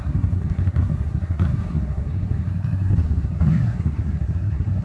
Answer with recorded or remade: remade